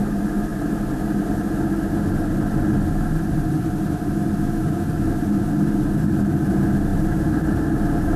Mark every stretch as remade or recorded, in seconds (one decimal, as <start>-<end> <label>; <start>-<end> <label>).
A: 0.0-8.2 recorded